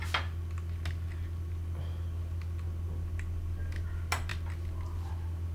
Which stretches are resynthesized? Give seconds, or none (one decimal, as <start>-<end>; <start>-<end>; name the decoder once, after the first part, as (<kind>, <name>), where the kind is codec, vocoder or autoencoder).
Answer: none